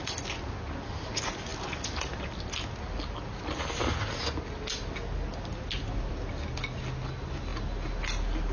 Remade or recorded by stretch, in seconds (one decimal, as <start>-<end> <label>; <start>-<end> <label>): 0.0-8.5 recorded